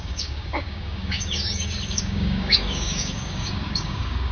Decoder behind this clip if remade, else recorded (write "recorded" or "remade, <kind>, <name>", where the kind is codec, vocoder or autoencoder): remade, codec, DAC